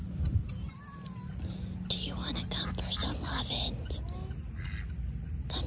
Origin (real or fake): real